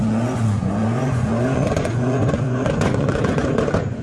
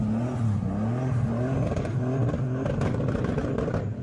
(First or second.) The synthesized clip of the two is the first